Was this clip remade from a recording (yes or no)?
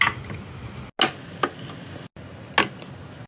no